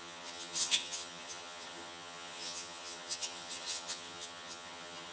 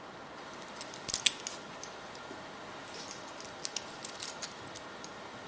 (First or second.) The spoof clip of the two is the first